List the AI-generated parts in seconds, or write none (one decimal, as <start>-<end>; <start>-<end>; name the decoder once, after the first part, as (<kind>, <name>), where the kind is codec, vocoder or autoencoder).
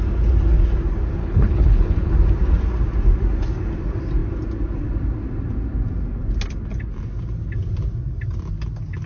1.2-2.1 (codec, HILCodec)